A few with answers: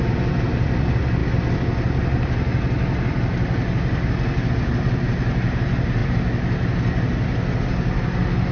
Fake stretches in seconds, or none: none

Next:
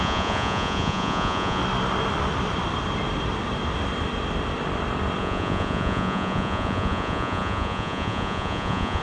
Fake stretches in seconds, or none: 0.0-1.6 (vocoder, Vocos); 5.2-9.0

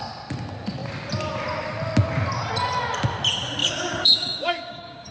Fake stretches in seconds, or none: 3.6-5.1 (codec, DAC)

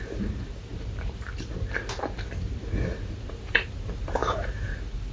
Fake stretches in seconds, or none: 0.0-1.3 (vocoder, BigVGAN v2); 2.9-5.1

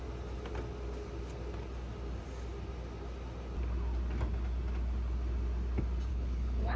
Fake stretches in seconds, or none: 6.1-6.8 (codec, HILCodec)